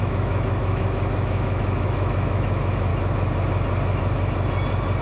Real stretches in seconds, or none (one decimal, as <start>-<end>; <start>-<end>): 2.9-5.0